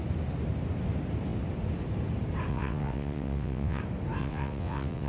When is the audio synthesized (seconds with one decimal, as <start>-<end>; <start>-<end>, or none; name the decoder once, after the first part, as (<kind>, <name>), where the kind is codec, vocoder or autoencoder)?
2.5-3.8 (vocoder, WaveNeXt); 4.2-5.1